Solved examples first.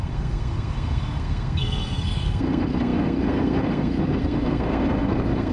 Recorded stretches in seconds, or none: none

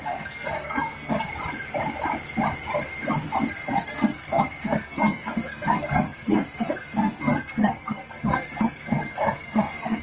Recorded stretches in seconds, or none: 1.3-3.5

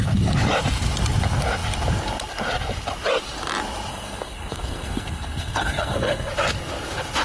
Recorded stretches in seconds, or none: 0.0-3.9; 6.3-7.2

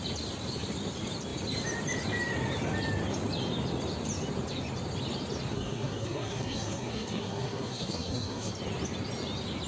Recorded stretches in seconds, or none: 0.0-5.5; 8.5-9.7